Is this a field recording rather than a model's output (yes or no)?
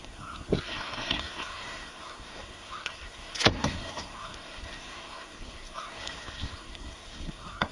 no